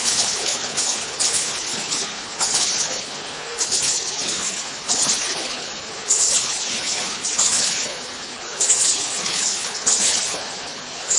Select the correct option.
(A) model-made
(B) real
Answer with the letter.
A